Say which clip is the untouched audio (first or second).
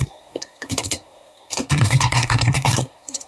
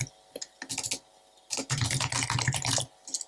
second